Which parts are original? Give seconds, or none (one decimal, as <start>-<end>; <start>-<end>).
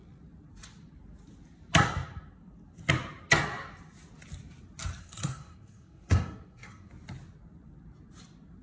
0.0-5.0; 6.9-8.6